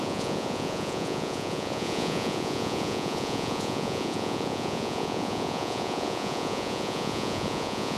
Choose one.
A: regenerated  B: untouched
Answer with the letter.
A